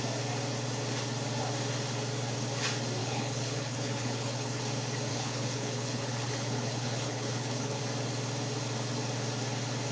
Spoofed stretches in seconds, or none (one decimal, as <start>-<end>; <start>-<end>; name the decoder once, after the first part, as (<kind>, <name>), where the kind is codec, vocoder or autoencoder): 3.0-4.6 (codec, HILCodec); 5.1-7.8